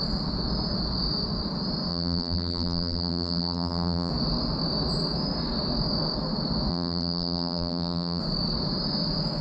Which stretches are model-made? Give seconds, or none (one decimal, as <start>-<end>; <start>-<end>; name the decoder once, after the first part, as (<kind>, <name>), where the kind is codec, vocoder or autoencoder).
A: 1.9-4.1 (vocoder, BigVGAN v2); 6.7-8.2